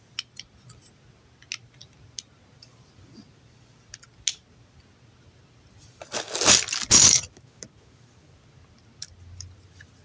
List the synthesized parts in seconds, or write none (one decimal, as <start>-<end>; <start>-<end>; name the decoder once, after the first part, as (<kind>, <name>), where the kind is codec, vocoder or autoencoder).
none